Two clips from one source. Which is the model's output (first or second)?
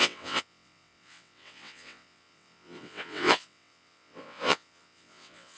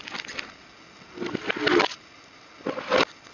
first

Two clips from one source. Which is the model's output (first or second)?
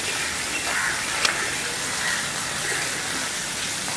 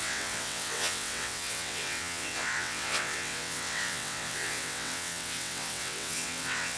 second